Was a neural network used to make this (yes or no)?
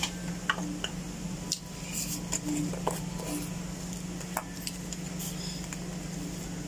no